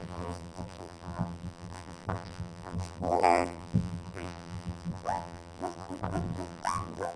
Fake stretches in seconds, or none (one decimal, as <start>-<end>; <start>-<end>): 0.0-7.2